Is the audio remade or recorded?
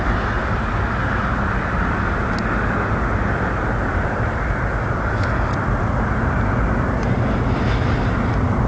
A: recorded